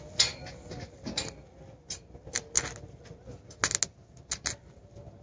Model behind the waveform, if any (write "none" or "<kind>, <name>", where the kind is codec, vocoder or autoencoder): none